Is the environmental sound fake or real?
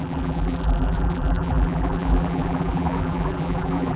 fake